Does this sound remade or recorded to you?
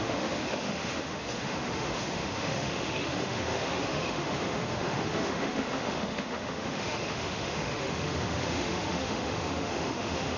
remade